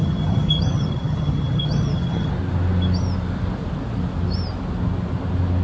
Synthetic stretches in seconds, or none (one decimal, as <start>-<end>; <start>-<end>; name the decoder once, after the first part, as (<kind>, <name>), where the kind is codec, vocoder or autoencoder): 0.0-2.3 (vocoder, HiFi-GAN)